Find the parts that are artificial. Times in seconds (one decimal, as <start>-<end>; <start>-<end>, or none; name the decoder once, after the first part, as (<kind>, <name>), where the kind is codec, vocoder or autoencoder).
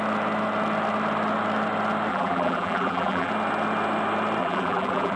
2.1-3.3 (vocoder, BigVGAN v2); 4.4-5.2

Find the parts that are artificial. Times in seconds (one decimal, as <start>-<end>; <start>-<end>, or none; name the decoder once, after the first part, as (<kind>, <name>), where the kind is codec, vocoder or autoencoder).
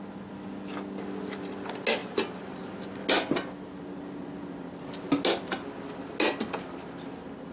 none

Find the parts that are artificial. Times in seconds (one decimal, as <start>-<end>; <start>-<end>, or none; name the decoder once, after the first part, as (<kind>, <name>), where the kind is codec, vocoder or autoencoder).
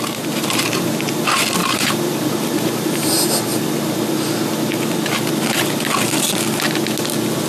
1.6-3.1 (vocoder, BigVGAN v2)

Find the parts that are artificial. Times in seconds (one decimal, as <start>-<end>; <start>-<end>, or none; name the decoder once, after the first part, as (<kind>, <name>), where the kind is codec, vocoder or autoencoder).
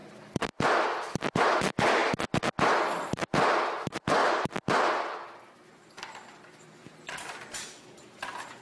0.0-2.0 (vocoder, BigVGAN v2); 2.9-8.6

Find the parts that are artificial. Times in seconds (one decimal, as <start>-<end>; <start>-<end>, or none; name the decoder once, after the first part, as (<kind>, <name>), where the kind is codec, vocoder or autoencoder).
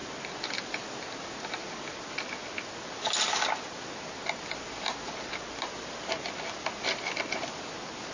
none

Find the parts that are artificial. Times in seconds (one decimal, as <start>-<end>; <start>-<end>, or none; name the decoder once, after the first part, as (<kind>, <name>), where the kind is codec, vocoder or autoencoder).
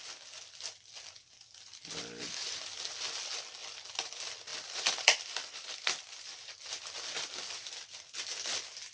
4.5-5.7 (vocoder, BigVGAN v2)